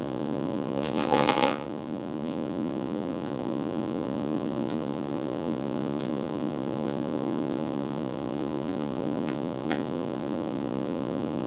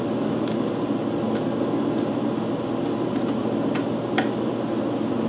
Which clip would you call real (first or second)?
second